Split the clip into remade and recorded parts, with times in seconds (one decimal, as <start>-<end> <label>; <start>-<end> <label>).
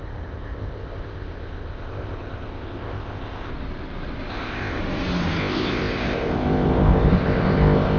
0.0-3.5 remade; 3.5-4.3 recorded; 4.3-4.8 remade; 4.8-5.4 recorded; 5.4-8.0 remade